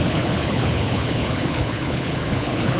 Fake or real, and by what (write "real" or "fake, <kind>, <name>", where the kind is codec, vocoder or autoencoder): fake, codec, HILCodec